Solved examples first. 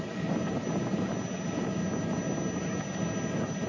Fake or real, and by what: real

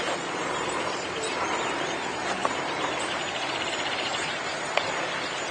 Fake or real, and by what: fake, vocoder, BigVGAN v2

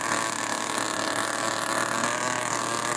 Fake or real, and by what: real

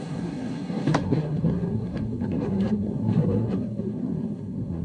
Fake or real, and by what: fake, codec, SNAC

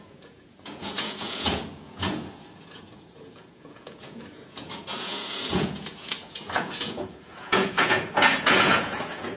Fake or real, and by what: fake, vocoder, Vocos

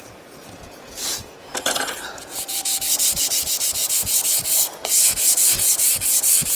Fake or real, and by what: fake, vocoder, Vocos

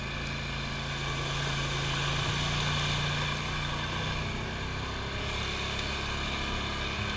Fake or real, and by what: real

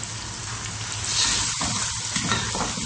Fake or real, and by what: real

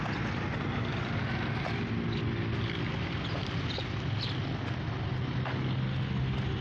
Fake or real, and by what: real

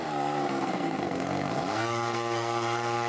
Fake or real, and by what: fake, codec, SNAC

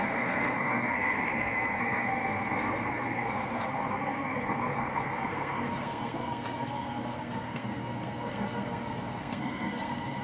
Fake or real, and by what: fake, codec, SNAC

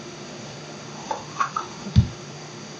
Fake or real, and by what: fake, autoencoder, DAC-VAE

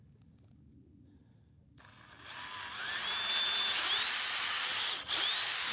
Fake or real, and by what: real